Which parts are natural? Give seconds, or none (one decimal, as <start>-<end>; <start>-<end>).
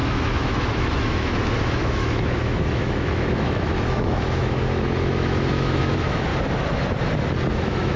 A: 6.3-7.5